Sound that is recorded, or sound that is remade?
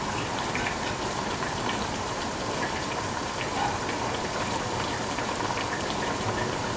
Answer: remade